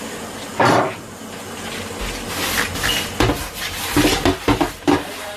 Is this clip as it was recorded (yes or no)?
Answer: yes